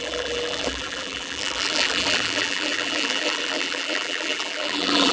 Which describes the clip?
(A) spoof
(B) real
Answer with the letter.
A